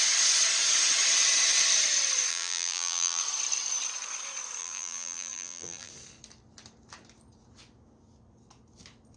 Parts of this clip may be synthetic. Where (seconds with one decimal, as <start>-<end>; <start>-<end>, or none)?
2.3-3.2; 4.6-5.9